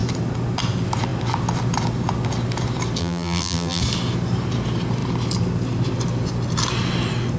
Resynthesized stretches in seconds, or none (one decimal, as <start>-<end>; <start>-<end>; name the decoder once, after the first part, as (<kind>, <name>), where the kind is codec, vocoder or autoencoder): 3.0-3.8 (vocoder, BigVGAN v2)